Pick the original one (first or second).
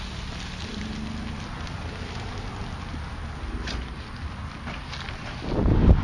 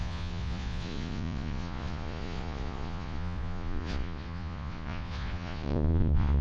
first